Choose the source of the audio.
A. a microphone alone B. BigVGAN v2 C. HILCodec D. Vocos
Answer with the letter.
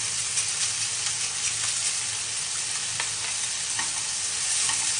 A